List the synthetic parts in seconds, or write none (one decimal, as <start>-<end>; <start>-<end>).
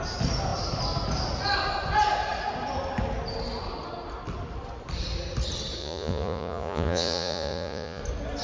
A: 5.8-8.0